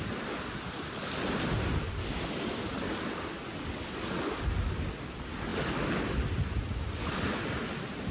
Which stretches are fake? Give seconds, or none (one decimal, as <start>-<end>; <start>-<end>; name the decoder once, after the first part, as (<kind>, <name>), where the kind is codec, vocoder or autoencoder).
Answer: none